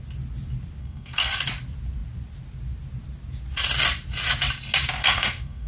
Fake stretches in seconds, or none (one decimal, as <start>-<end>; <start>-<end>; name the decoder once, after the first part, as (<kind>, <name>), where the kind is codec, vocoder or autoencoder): 0.8-1.3 (codec, SNAC); 5.0-5.7